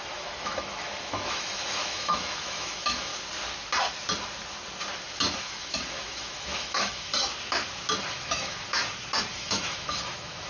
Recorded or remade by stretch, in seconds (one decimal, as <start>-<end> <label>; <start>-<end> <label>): 0.0-3.1 remade; 3.1-5.4 recorded; 5.4-7.1 remade; 7.1-8.1 recorded; 8.1-8.8 remade; 8.8-9.3 recorded; 9.3-10.5 remade